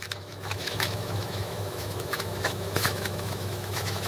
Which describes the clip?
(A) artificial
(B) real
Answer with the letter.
A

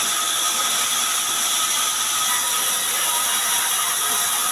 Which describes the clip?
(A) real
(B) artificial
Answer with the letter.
A